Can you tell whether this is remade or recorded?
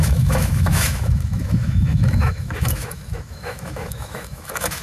remade